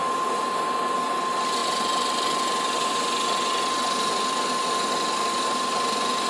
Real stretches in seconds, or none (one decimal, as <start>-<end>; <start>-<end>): 0.0-6.3